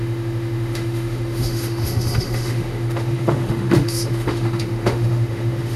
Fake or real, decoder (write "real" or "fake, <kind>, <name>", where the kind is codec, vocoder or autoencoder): fake, autoencoder, DAC-VAE